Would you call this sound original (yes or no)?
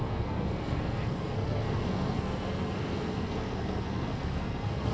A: no